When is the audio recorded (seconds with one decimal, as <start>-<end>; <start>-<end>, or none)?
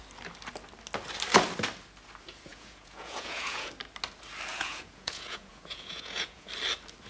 0.0-2.5; 3.7-4.5; 6.5-7.1